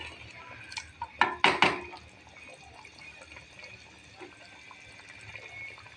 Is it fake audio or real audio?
real